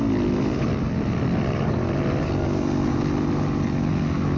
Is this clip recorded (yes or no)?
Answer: yes